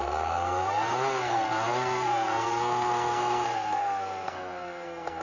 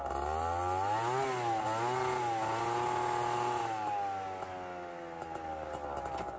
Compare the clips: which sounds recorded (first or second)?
second